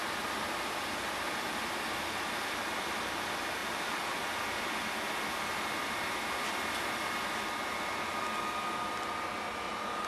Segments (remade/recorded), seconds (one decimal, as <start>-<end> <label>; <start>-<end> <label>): 0.0-2.6 remade; 2.6-3.6 recorded; 3.6-8.2 remade; 8.2-10.1 recorded